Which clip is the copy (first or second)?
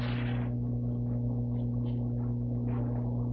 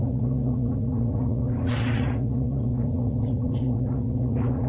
second